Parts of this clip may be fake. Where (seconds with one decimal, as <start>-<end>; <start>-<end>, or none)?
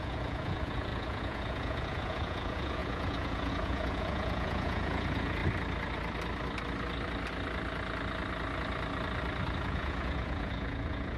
0.0-5.4; 9.6-11.2